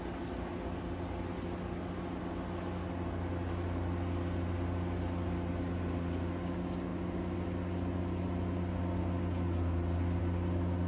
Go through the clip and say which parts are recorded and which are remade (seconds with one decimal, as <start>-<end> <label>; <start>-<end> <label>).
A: 0.0-10.9 recorded